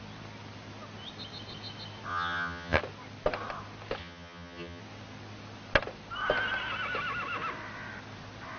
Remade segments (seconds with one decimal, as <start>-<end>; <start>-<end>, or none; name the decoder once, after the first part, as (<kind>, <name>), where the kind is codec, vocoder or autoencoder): 2.1-2.8 (vocoder, HiFi-GAN); 4.0-4.8